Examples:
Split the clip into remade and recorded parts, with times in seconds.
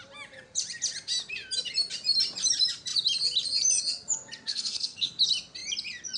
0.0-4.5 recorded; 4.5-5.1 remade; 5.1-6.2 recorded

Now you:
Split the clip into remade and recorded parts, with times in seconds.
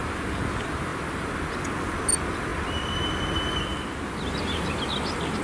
0.0-5.4 recorded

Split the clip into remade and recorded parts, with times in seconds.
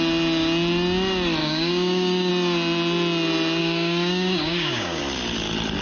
0.0-1.4 recorded; 1.4-2.3 remade; 2.3-3.6 recorded; 3.6-5.0 remade; 5.0-5.8 recorded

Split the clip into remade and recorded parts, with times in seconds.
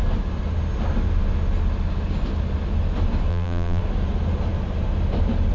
0.0-3.3 recorded; 3.3-3.8 remade; 3.8-5.5 recorded